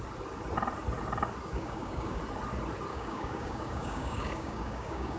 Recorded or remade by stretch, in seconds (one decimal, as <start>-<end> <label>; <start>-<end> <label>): 0.0-1.5 recorded; 1.5-2.2 remade; 2.2-2.9 recorded; 2.9-5.2 remade